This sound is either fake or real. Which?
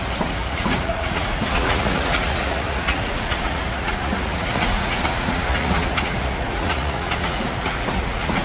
fake